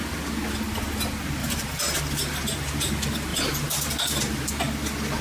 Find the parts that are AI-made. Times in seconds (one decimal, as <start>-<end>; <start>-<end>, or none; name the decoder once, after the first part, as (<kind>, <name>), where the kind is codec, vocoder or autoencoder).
1.4-2.0 (vocoder, BigVGAN v2); 3.3-4.5